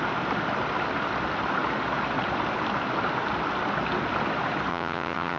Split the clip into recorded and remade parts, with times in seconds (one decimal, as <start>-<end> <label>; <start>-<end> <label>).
0.0-4.7 recorded; 4.7-5.4 remade